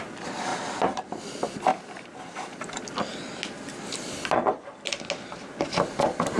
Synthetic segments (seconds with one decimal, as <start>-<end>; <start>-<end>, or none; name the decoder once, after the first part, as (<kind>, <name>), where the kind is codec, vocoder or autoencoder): 0.5-1.2 (vocoder, BigVGAN v2); 1.7-2.6